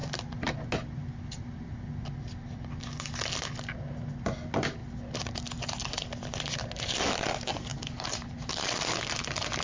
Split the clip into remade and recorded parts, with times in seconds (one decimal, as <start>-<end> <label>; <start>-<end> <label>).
0.0-7.7 recorded; 7.7-8.5 remade; 8.5-9.6 recorded